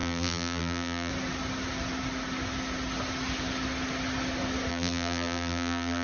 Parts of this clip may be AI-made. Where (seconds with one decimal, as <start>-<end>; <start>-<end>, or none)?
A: 0.0-1.1; 4.7-6.0